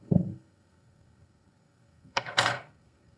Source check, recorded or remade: remade